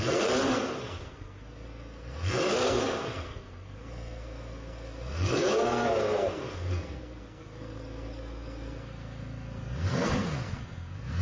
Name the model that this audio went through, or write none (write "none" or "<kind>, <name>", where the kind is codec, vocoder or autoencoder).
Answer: codec, SNAC